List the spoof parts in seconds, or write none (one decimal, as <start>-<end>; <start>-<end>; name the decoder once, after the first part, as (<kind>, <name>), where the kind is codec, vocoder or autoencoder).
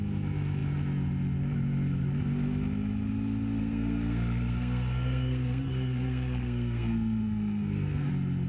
3.6-8.1 (codec, SNAC)